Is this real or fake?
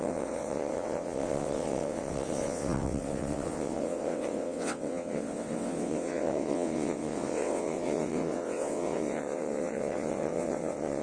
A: fake